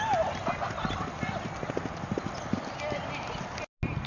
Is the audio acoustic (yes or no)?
yes